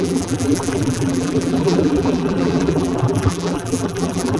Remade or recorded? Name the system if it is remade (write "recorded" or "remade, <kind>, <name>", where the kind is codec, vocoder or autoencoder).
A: remade, vocoder, BigVGAN v2